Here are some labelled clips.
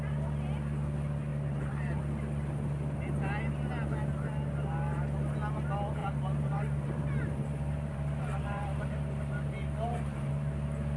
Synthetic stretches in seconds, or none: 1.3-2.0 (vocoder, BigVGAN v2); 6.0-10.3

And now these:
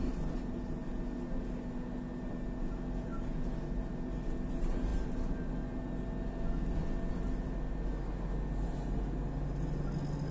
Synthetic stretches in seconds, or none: none

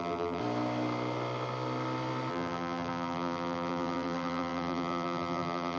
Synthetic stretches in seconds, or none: 0.0-0.4 (vocoder, BigVGAN v2); 2.3-5.8

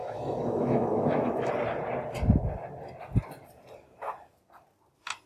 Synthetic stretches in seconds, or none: 0.0-1.5 (autoencoder, DAC-VAE)

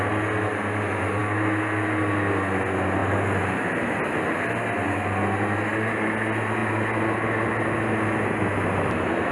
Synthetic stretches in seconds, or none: none